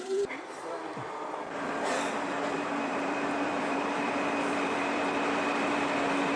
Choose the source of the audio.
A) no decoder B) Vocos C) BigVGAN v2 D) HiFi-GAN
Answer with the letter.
C